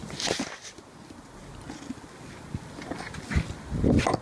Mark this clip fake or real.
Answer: real